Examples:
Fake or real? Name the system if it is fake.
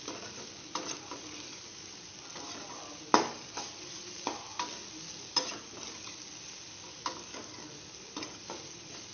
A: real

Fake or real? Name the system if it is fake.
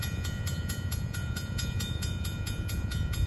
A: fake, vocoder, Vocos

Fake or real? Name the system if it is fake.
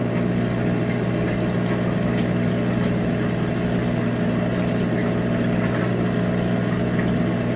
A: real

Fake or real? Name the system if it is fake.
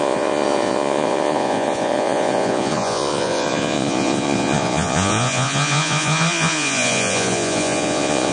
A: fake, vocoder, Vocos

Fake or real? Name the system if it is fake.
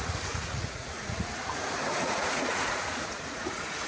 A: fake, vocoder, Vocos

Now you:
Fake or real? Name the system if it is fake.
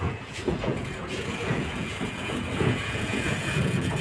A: fake, vocoder, Vocos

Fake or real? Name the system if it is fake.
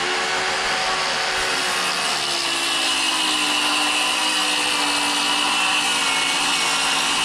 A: real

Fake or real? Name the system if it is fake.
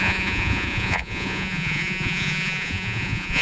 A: fake, vocoder, Vocos